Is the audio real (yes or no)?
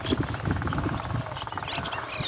yes